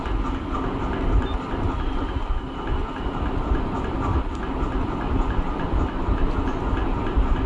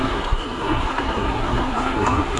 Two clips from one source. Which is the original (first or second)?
first